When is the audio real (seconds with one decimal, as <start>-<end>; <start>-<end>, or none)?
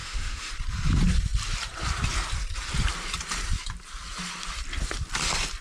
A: 0.5-5.6